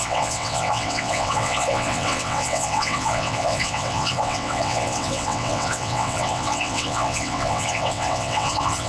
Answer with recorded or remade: remade